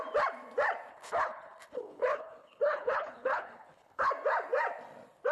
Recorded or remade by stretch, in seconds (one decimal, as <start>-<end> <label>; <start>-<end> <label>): 0.0-0.9 recorded; 0.9-4.1 remade; 4.1-5.3 recorded